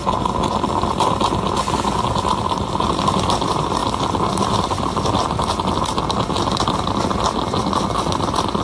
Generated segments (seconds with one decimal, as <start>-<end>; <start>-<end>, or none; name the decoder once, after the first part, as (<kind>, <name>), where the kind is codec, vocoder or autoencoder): none